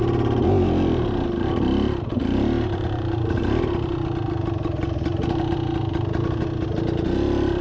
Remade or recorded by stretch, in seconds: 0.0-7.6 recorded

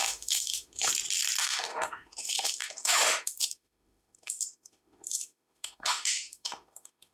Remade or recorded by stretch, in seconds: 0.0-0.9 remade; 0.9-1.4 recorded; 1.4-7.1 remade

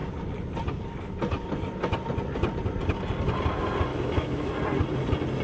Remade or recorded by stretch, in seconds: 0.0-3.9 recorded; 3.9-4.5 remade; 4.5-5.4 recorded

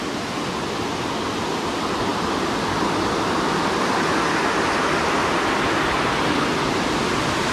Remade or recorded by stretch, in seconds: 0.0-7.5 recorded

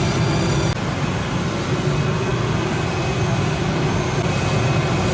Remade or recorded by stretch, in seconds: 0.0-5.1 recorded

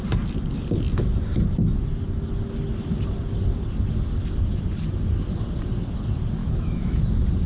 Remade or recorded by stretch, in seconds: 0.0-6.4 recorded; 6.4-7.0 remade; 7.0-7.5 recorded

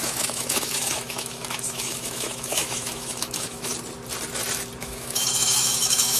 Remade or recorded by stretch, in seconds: 0.0-3.7 remade; 3.7-4.8 recorded; 4.8-6.2 remade

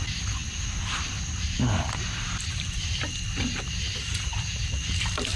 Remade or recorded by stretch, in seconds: 0.0-5.4 recorded